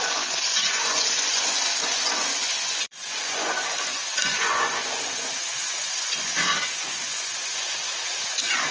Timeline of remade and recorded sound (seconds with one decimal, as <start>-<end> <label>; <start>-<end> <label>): 0.0-8.7 remade